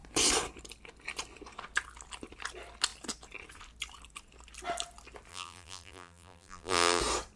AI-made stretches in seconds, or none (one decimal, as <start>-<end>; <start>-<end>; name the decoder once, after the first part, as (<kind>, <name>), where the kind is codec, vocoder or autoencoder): 5.3-7.0 (vocoder, BigVGAN v2)